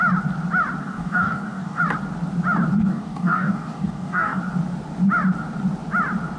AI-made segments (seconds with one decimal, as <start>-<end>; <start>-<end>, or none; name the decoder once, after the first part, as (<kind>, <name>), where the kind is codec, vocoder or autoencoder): 0.8-1.8 (codec, DAC); 2.9-4.4